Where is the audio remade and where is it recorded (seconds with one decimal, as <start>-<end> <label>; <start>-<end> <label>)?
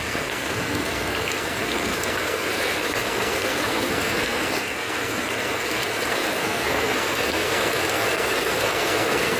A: 0.0-9.4 remade